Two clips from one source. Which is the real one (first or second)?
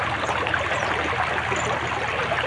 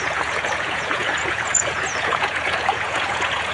first